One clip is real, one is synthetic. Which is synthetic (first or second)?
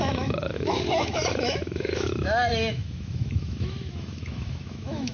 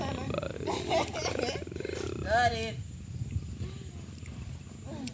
first